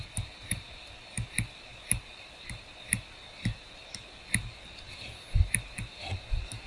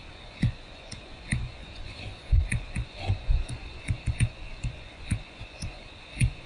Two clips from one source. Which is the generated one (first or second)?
second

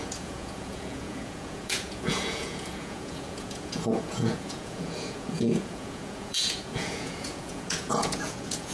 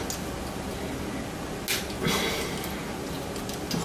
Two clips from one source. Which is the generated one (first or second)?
first